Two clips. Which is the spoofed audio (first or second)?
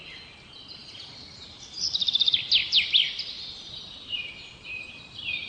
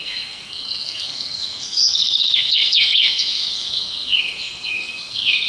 second